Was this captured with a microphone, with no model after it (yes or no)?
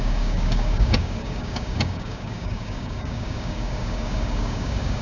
no